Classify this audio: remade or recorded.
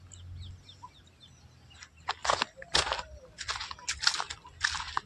recorded